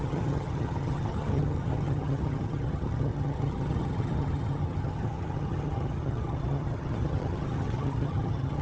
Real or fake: fake